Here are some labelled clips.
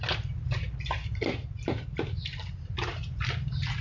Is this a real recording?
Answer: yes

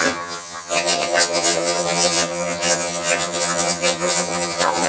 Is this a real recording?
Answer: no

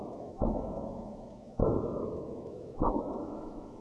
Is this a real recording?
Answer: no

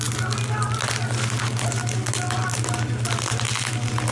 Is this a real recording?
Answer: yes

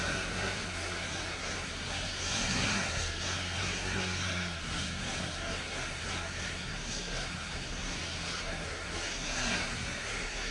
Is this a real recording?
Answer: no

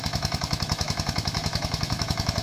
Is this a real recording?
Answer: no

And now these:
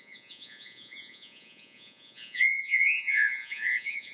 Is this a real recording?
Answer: no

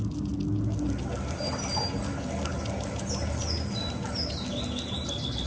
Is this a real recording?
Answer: yes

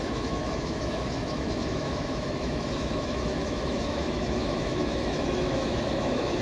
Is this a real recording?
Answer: no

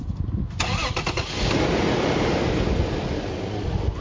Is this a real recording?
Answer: yes